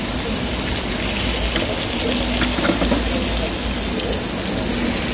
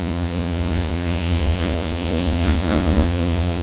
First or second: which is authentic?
first